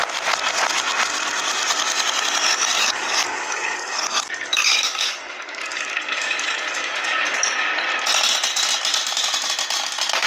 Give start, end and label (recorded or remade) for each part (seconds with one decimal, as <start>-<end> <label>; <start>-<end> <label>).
0.0-2.7 recorded; 2.7-7.7 remade; 7.7-10.3 recorded